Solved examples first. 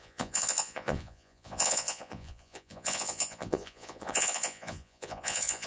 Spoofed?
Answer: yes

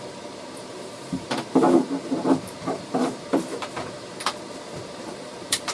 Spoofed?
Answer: yes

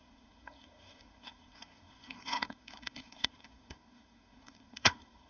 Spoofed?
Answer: yes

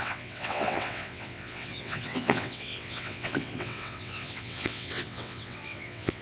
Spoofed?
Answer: yes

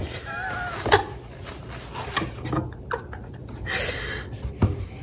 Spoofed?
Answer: no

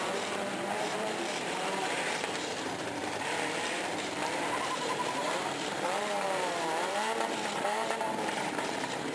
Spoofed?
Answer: yes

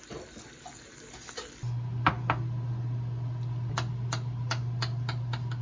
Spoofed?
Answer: no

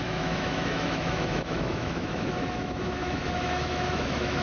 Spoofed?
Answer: yes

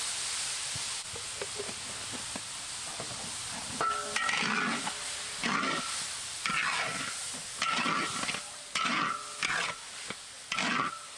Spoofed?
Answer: no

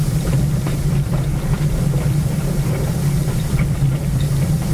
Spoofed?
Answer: yes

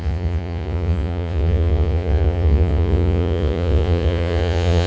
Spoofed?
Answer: yes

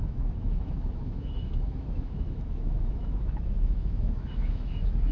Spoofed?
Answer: yes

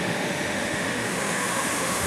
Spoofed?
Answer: yes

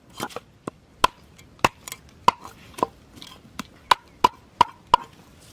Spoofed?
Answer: no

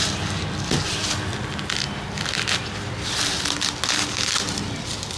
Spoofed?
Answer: no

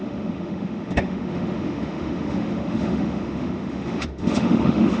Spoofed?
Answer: yes